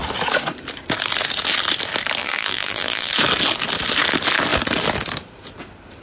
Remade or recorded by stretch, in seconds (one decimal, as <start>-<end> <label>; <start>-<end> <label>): 0.0-2.2 recorded; 2.2-3.1 remade; 3.1-6.0 recorded